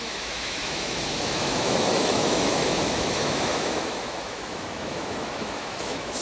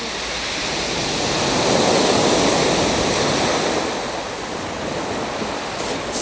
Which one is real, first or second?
second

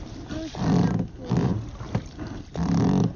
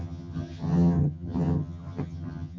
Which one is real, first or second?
first